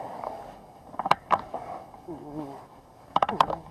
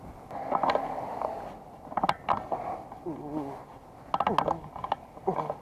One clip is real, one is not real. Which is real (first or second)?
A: second